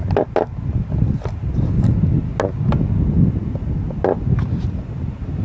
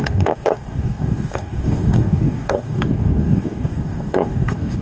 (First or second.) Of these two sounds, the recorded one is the first